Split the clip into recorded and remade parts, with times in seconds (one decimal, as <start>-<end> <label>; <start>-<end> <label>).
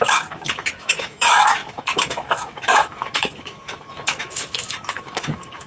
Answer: 0.0-5.7 remade